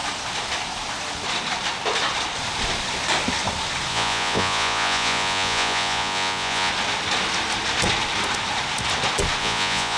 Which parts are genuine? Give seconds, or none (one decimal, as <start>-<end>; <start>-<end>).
0.0-3.9; 6.7-9.4